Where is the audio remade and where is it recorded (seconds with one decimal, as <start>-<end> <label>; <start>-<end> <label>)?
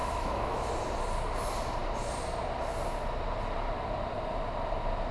0.0-0.7 remade; 0.7-5.1 recorded